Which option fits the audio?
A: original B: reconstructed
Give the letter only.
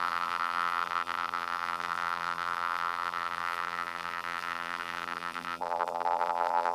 B